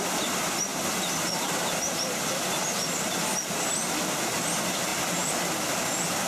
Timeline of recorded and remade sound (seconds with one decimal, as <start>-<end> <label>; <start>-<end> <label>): 0.0-6.3 remade